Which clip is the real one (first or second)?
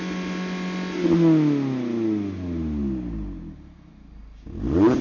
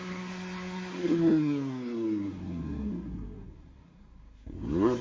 first